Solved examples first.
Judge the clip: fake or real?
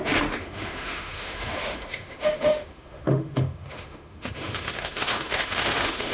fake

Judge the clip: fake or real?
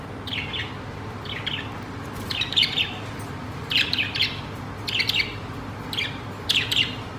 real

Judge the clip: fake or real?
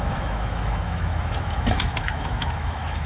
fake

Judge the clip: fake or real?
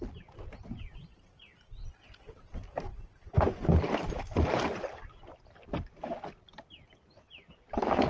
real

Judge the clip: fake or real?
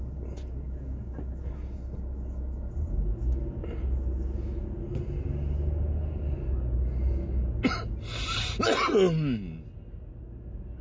real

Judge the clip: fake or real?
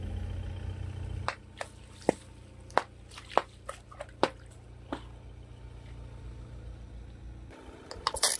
real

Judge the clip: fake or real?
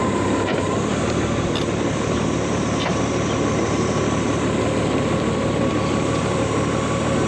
real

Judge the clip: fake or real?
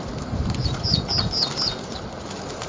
real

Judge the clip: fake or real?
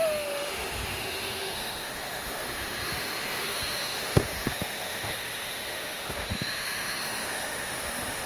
fake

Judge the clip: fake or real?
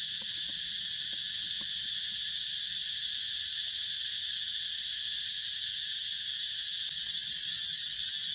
real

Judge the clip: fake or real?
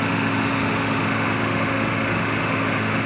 fake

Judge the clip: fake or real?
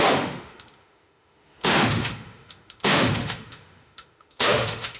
fake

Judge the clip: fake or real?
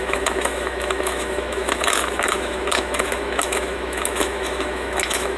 fake